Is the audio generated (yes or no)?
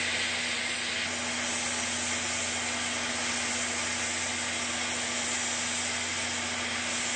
no